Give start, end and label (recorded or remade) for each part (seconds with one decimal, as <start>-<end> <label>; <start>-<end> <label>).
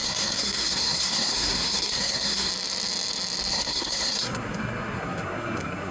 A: 0.0-2.5 remade; 2.5-3.5 recorded; 3.5-5.9 remade